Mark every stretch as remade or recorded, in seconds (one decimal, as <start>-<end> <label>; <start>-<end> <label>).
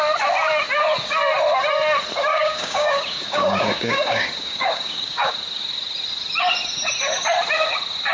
0.0-2.3 recorded; 2.3-5.3 remade; 5.3-8.1 recorded